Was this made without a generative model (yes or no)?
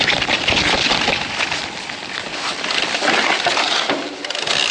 yes